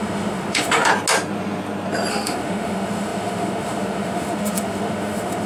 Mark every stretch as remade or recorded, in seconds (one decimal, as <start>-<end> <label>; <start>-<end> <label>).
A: 0.0-0.9 remade; 0.9-2.1 recorded; 2.1-5.5 remade